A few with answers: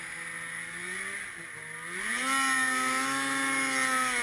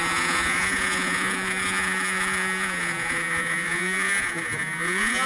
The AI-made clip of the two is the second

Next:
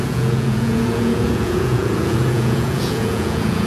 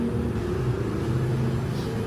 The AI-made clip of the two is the first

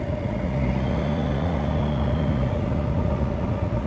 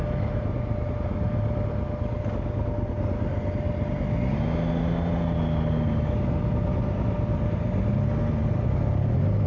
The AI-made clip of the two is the first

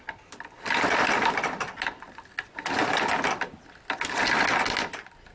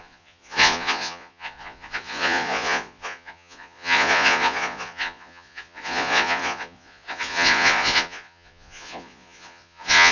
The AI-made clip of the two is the second